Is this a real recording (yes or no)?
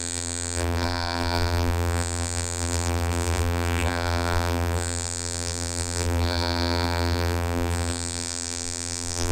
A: no